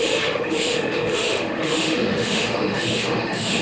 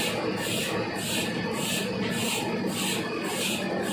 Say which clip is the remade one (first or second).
first